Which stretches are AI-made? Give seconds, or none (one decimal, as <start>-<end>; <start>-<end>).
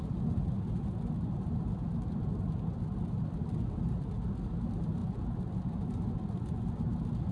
5.0-6.6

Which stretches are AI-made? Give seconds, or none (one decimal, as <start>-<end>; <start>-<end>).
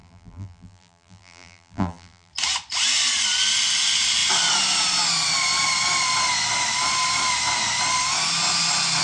0.0-2.3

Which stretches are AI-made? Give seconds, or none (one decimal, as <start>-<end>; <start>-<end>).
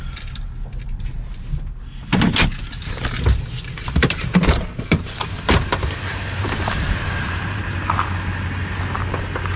3.8-7.6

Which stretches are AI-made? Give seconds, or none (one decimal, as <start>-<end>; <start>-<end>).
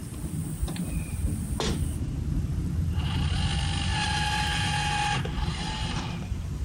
4.0-4.5; 5.5-6.6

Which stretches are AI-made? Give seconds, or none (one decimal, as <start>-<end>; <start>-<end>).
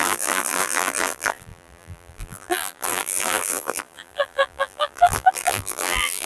0.0-6.3